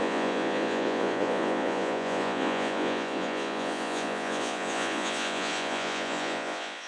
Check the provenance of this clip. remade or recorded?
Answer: remade